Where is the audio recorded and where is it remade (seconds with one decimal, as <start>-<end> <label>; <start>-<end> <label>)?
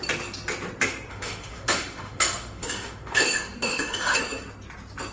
0.0-1.1 recorded; 1.1-4.2 remade; 4.2-5.1 recorded